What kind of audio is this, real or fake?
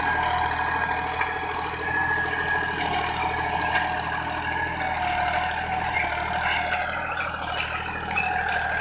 real